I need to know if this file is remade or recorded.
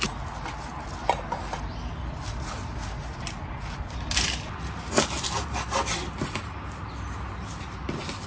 recorded